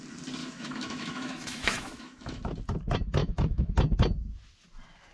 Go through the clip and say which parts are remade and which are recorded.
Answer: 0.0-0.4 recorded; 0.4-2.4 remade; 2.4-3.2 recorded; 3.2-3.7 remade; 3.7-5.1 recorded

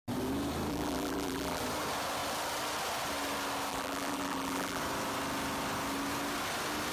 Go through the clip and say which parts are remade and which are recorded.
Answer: 0.0-0.7 recorded; 0.7-1.6 remade; 1.6-3.7 recorded; 3.7-4.8 remade; 4.8-6.9 recorded

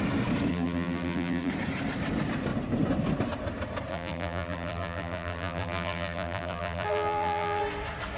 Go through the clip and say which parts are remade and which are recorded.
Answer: 0.0-0.5 recorded; 0.5-1.5 remade; 1.5-3.9 recorded; 3.9-7.6 remade; 7.6-8.2 recorded

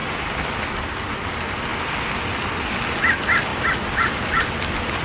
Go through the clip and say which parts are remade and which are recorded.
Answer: 0.0-1.7 recorded; 1.7-2.8 remade; 2.8-5.0 recorded

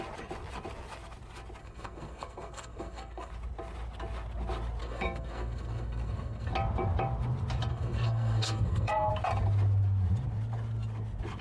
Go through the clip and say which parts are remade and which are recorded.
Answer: 0.0-1.6 recorded; 1.6-3.3 remade; 3.3-4.8 recorded; 4.8-6.5 remade; 6.5-7.7 recorded; 7.7-9.1 remade; 9.1-11.4 recorded

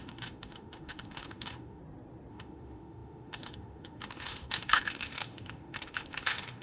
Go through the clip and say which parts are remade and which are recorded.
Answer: 0.0-1.8 remade; 1.8-2.3 recorded; 2.3-6.6 remade

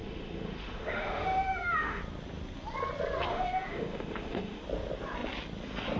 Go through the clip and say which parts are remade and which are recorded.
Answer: 0.0-2.0 remade; 2.0-3.3 recorded; 3.3-4.6 remade; 4.6-6.0 recorded

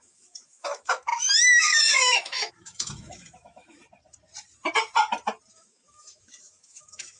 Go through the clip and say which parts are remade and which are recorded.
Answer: 0.0-3.8 remade; 3.8-5.5 recorded; 5.5-7.2 remade